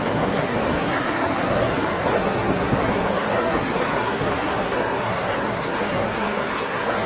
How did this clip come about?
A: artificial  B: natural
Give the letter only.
A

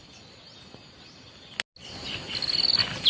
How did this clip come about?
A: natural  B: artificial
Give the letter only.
A